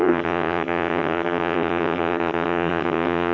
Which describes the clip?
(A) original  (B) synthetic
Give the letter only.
B